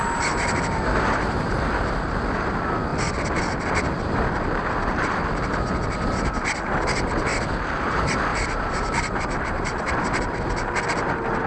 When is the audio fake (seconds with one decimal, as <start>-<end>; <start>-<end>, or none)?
8.3-10.4